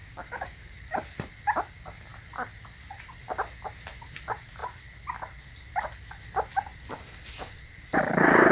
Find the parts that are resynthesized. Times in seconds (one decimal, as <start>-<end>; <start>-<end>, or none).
0.0-0.7

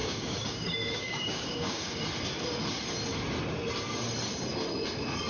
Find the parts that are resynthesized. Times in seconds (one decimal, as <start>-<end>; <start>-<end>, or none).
0.0-2.0

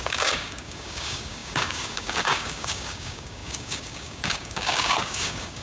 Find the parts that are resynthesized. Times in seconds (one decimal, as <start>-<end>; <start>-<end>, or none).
0.0-5.6

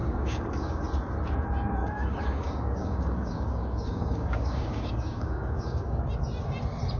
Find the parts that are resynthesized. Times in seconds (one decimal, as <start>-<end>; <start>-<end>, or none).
0.0-0.8; 1.8-6.0

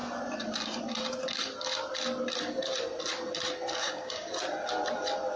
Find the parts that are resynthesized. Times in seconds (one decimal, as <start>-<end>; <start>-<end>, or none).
3.8-4.3

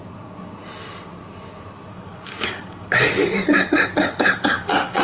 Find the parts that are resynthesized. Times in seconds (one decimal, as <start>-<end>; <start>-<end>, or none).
1.9-5.0